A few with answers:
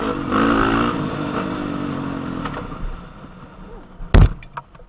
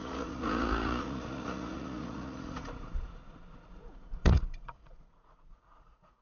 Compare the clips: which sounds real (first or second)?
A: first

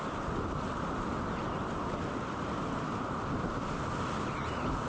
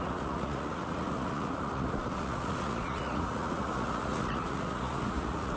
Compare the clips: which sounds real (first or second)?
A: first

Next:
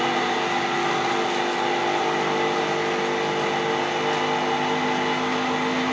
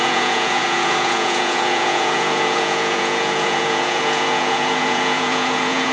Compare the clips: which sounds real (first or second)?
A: first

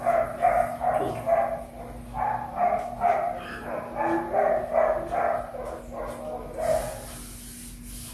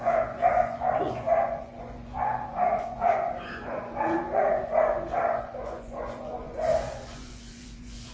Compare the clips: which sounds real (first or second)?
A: first